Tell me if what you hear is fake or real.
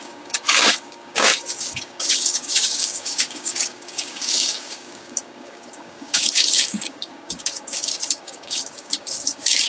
fake